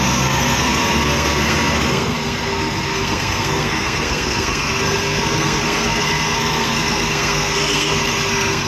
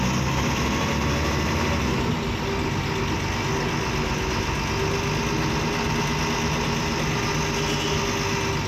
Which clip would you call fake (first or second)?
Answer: first